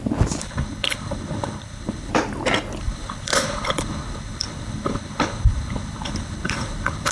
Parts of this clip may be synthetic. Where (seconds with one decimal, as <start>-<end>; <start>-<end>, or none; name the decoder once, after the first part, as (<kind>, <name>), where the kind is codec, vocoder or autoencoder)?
0.4-2.1 (codec, HILCodec); 2.8-7.1